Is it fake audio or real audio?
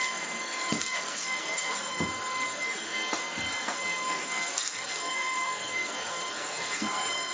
fake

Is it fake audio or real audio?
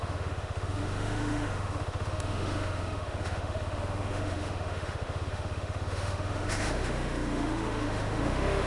fake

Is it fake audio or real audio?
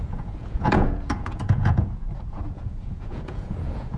fake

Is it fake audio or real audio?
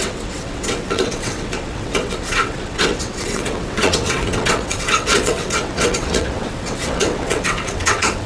fake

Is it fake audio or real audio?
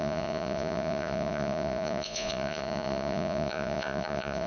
fake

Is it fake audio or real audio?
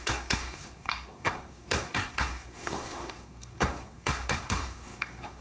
fake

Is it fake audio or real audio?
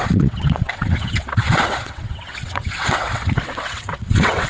fake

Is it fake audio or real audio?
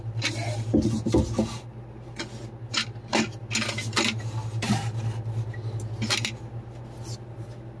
real